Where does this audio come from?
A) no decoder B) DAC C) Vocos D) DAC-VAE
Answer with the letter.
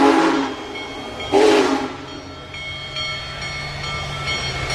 A